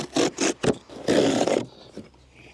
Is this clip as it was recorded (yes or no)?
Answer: yes